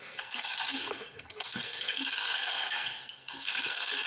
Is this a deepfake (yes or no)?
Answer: yes